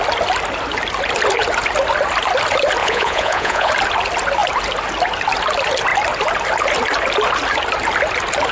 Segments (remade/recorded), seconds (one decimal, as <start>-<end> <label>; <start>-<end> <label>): 0.0-2.8 recorded; 2.8-3.7 remade; 3.7-8.5 recorded